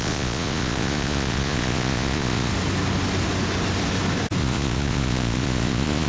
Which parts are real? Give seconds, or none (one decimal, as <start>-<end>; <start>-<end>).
2.5-4.4